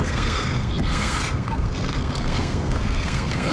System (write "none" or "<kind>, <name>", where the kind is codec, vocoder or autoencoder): codec, SNAC